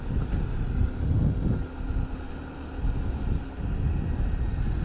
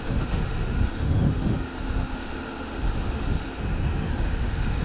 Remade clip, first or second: second